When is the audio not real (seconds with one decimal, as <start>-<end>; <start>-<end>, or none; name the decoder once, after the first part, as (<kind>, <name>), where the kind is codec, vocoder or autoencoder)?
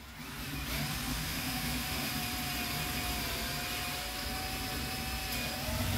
1.1-2.1 (autoencoder, DAC-VAE)